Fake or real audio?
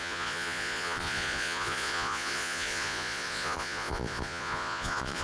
fake